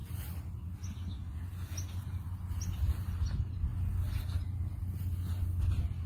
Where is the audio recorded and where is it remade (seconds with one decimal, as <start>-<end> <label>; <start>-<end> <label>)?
0.0-6.1 recorded